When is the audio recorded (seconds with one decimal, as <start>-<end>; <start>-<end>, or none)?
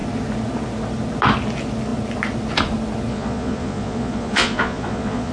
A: 0.0-3.1